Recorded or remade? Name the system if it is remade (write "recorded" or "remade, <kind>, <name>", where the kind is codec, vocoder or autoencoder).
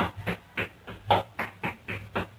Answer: recorded